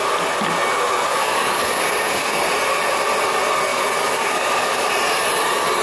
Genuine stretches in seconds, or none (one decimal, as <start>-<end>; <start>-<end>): 0.0-1.1; 2.4-3.7; 4.9-5.8